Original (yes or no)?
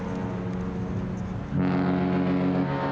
yes